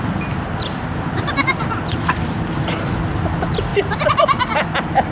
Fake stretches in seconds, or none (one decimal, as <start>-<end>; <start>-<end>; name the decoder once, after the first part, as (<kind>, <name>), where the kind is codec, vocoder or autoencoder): 3.7-5.1 (vocoder, BigVGAN v2)